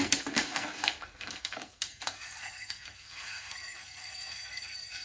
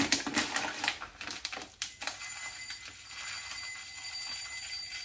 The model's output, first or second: first